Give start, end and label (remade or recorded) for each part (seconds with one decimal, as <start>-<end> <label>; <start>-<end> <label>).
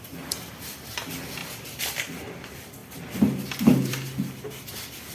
0.0-1.4 recorded; 1.4-2.2 remade; 2.2-5.1 recorded